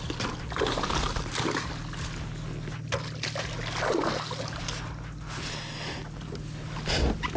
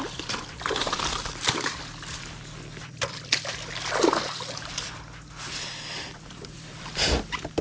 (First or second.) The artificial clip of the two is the second